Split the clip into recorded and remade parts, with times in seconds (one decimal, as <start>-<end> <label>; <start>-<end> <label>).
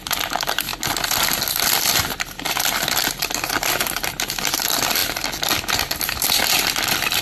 0.0-7.2 recorded